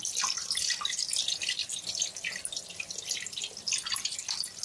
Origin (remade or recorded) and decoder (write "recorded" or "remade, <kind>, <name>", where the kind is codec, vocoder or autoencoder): recorded